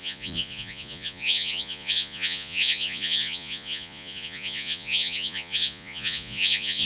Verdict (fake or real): fake